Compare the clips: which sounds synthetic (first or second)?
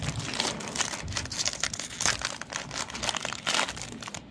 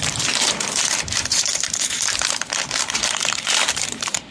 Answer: second